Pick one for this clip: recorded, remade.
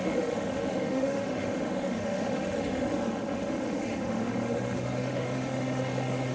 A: remade